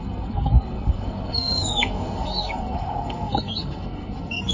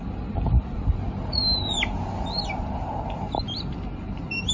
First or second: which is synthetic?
first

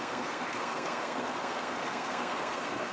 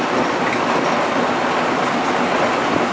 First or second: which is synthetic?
first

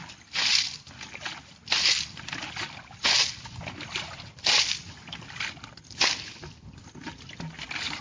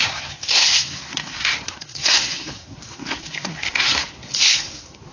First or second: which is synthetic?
second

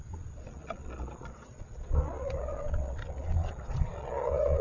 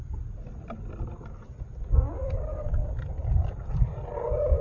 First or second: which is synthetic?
first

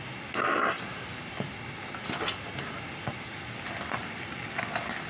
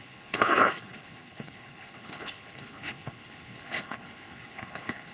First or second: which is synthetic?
second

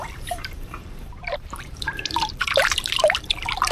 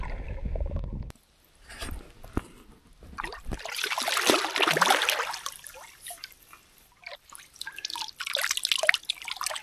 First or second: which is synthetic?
first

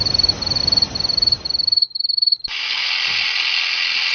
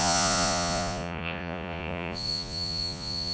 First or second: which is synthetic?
second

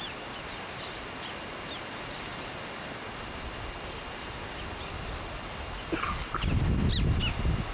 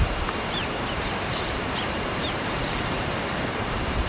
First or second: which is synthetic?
second